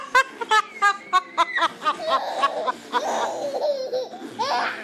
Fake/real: real